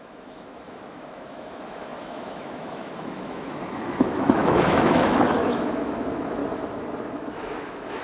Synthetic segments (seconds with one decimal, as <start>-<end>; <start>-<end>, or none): 0.0-6.4; 7.1-8.0

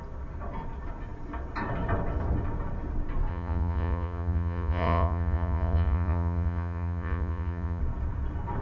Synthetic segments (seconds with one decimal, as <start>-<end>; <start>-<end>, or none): 3.3-7.8

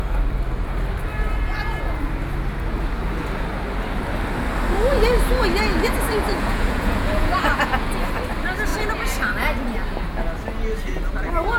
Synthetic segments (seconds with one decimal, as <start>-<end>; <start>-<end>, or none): 5.7-7.9

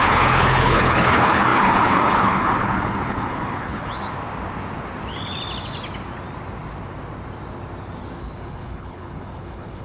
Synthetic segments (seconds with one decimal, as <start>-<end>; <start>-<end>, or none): 0.0-3.9; 8.2-9.8

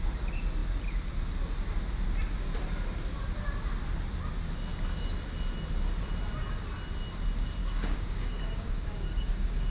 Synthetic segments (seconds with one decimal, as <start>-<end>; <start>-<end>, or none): 7.6-9.7

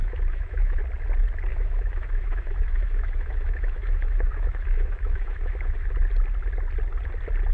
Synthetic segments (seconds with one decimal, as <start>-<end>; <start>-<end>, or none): 0.0-0.8; 1.5-5.9